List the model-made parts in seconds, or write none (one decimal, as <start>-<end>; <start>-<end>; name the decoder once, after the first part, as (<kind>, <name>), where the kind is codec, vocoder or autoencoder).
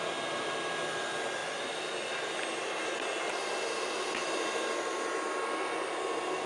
none